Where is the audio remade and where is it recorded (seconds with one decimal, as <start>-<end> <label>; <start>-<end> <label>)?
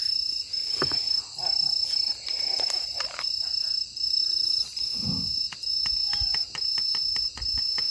0.0-1.4 recorded; 1.4-4.2 remade; 4.2-7.9 recorded